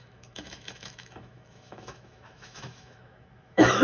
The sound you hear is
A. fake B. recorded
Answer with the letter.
A